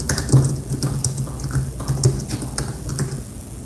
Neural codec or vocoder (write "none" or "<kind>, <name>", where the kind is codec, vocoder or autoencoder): none